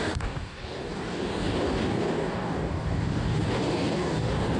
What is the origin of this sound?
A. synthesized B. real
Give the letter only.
A